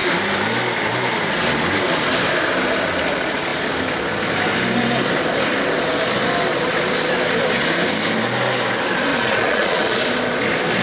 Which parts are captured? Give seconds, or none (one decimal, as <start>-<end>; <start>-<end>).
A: 0.0-9.1; 10.0-10.8